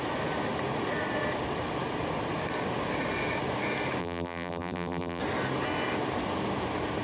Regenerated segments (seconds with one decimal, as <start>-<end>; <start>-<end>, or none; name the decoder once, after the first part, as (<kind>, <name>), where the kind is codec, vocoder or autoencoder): 4.0-5.2 (vocoder, BigVGAN v2)